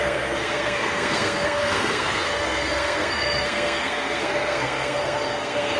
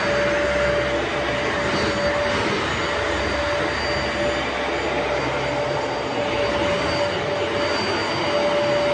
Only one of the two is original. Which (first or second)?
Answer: second